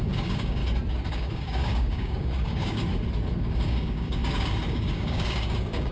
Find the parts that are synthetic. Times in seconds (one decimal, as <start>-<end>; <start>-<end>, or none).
0.0-0.6; 1.1-2.8; 3.4-5.9